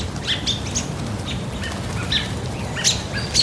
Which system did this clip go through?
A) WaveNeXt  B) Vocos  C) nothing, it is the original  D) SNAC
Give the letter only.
C